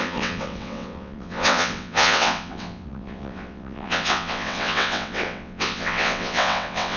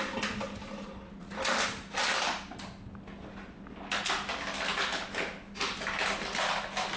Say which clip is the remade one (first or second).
first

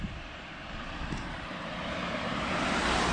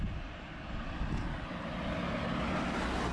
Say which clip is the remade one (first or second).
first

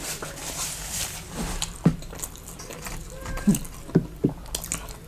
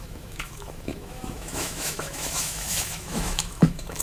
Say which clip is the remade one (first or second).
second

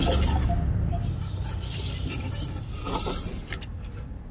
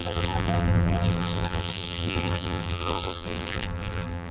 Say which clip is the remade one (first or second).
second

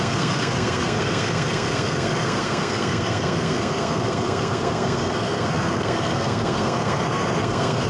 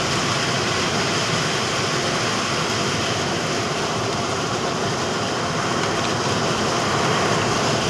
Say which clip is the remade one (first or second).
first